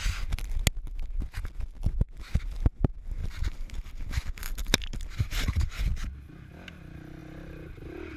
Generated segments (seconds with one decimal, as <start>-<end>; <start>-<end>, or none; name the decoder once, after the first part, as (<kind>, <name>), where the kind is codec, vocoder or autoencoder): 3.2-5.8 (vocoder, BigVGAN v2)